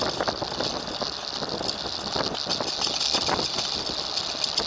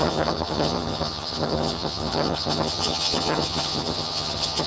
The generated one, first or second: second